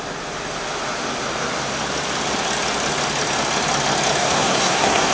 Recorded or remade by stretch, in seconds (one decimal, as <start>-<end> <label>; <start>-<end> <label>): 0.0-4.2 recorded; 4.2-5.1 remade